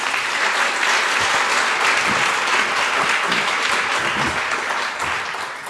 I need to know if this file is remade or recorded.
recorded